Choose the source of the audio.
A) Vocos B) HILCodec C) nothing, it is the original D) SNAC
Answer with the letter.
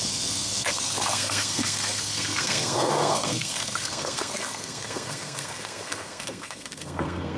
D